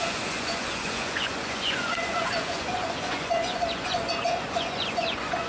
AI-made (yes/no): yes